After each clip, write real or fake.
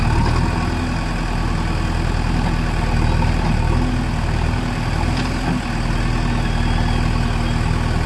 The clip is real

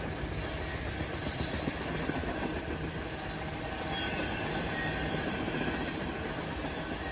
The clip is real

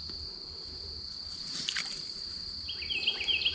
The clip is real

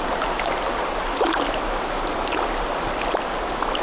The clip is real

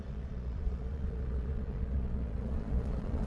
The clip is fake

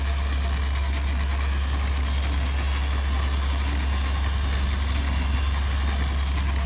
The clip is real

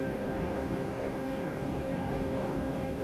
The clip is fake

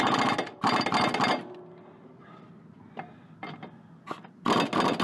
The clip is real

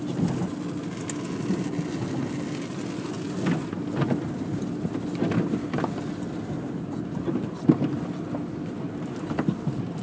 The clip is real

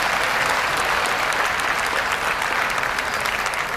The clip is real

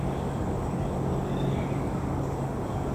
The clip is fake